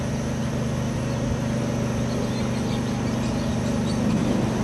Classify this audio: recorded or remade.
recorded